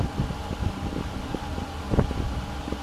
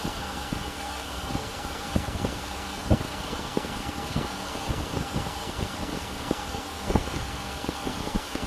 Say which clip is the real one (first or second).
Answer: first